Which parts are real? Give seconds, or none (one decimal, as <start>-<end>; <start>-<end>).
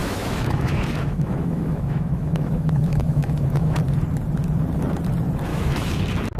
3.8-5.5; 6.0-6.4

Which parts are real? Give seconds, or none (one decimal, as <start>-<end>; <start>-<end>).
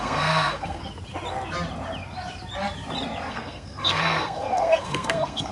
0.8-3.3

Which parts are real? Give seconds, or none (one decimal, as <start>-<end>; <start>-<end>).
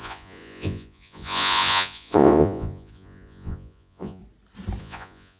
4.2-4.8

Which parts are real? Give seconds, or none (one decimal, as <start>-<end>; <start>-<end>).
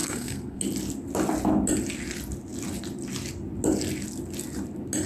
0.6-5.1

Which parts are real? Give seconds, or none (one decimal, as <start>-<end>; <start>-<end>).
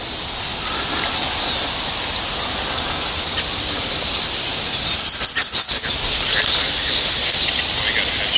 0.0-8.4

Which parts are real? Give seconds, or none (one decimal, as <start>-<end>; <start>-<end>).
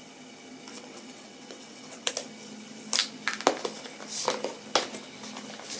0.0-0.7; 2.1-5.8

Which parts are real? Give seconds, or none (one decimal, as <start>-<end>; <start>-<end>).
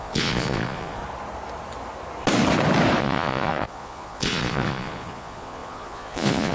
1.0-3.0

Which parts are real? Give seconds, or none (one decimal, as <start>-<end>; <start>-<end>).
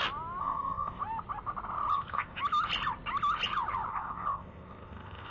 0.0-0.4; 1.0-1.9; 2.4-3.9